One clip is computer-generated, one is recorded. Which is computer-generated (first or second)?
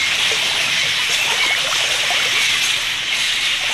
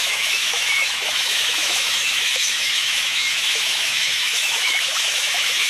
second